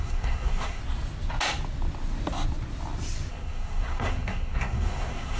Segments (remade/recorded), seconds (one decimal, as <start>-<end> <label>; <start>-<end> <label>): 0.0-0.8 remade; 0.8-3.3 recorded; 3.3-5.4 remade